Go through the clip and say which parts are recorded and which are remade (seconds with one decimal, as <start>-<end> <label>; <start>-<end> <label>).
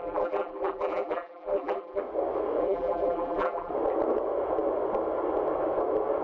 0.0-2.0 remade; 2.0-2.6 recorded; 2.6-3.7 remade; 3.7-6.2 recorded